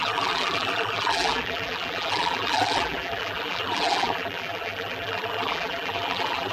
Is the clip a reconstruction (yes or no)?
yes